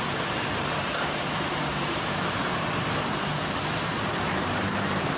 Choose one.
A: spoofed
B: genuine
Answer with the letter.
A